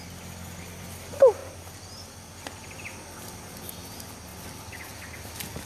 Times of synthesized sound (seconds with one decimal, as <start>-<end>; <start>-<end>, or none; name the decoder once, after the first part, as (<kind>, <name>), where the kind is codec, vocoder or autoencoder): none